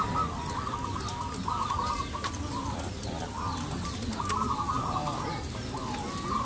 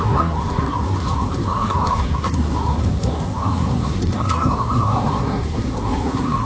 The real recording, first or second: first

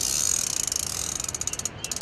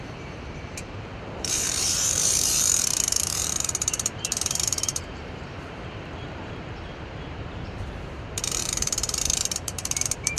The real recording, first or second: first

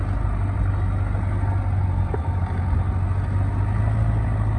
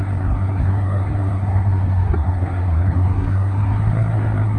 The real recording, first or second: first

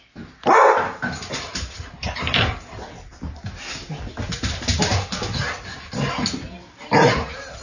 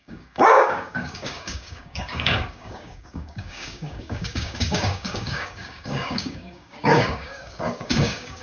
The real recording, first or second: first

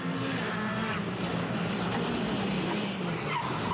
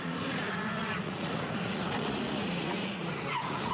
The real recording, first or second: first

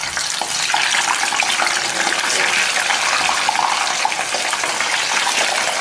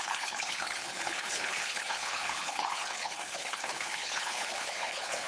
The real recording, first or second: first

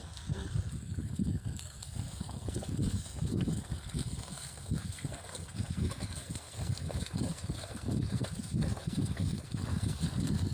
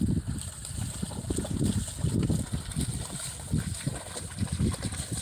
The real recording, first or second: second